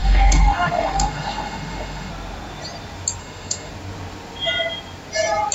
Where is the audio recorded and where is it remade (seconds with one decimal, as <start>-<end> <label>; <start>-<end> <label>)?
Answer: 0.0-2.1 remade; 2.1-3.2 recorded; 3.2-3.7 remade; 3.7-5.5 recorded